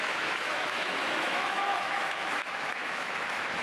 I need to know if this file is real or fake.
fake